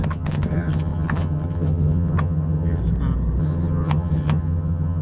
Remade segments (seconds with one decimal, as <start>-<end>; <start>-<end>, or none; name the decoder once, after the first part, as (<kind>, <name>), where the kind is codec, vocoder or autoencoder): 0.0-2.8 (vocoder, HiFi-GAN); 3.4-5.0